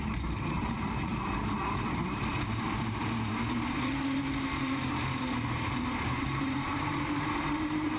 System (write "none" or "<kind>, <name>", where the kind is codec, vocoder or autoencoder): vocoder, BigVGAN v2